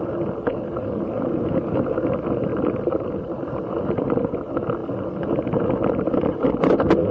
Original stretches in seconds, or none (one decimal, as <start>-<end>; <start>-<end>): 0.0-0.5; 1.0-2.5; 4.2-7.1